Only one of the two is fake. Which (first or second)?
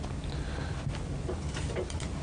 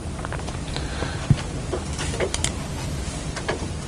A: second